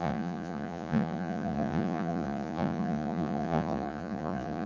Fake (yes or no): yes